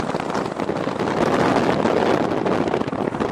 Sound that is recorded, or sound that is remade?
recorded